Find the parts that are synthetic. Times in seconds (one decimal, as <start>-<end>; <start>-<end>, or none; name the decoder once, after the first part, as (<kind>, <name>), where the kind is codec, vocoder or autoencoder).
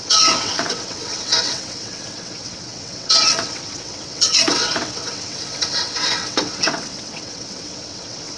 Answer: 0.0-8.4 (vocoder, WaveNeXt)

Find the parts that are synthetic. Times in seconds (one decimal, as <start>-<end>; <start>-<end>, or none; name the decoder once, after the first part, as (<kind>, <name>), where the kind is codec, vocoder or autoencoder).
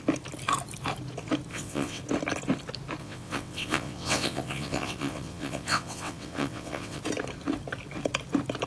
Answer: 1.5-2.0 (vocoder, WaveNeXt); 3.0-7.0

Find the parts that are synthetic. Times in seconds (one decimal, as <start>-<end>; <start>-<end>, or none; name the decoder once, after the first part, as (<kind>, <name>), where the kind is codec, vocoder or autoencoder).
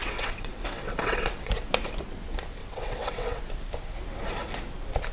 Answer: 0.0-1.5 (vocoder, WaveNeXt); 2.6-3.4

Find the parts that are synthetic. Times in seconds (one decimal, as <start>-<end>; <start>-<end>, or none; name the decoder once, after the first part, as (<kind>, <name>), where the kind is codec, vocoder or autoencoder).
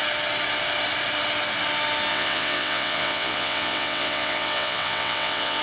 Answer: 2.1-5.6 (vocoder, WaveNeXt)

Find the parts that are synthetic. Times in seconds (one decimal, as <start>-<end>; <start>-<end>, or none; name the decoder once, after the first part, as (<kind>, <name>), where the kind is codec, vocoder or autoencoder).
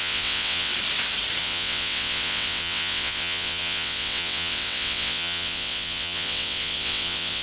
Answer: 0.0-0.7 (vocoder, WaveNeXt); 1.4-7.4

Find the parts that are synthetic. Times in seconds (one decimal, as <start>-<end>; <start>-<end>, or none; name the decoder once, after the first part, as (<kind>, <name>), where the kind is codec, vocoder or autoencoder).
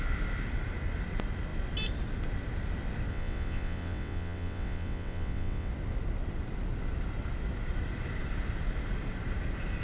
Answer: 3.1-5.7 (vocoder, WaveNeXt)